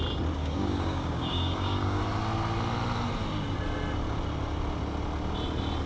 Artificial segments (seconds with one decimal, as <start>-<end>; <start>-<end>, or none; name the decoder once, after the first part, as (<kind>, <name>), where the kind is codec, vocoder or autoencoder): 0.4-2.0 (codec, DAC)